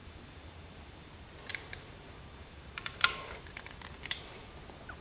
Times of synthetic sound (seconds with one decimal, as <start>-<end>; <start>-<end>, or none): 0.0-1.1; 1.5-4.5